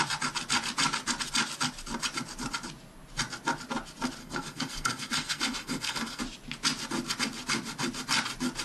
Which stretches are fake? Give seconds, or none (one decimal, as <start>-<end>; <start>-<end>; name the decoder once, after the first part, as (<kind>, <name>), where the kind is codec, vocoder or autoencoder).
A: 4.2-6.2 (codec, SNAC)